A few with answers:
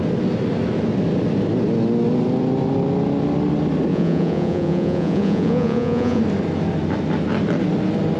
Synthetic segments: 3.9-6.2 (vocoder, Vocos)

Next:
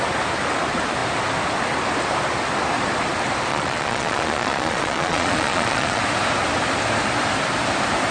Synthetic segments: 3.5-6.0 (vocoder, Vocos)